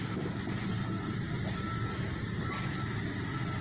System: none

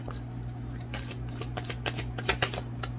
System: none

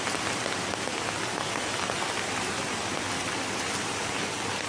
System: none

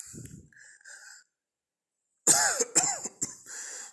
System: none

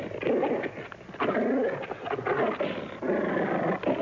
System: none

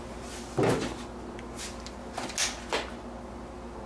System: none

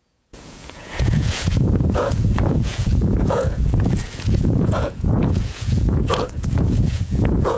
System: vocoder, Vocos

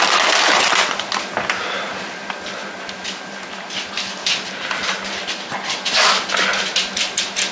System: none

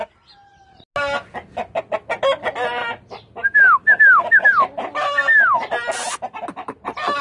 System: none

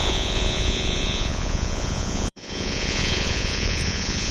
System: vocoder, Vocos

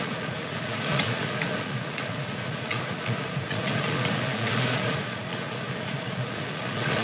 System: vocoder, Vocos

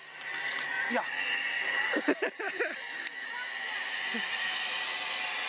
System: none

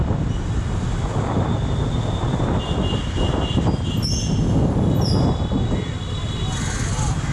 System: none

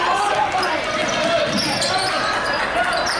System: none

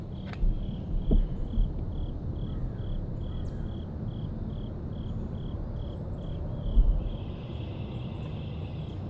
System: none